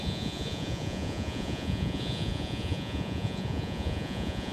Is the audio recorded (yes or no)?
no